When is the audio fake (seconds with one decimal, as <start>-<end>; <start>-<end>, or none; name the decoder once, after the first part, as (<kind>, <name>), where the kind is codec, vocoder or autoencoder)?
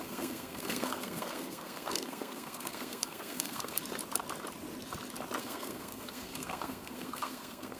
0.0-3.8 (codec, SNAC); 5.4-7.8